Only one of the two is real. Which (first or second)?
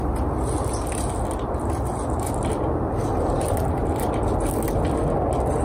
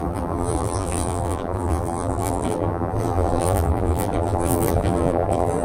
first